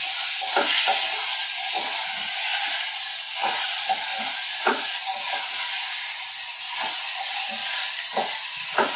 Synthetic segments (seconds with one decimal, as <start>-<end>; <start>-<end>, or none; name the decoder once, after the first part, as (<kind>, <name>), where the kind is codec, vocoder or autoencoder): none